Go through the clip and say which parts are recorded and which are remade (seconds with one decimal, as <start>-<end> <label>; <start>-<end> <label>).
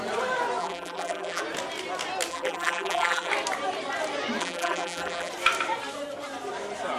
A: 0.0-0.6 recorded; 0.6-1.4 remade; 1.4-2.3 recorded; 2.3-3.3 remade; 3.3-4.4 recorded; 4.4-5.3 remade; 5.3-7.0 recorded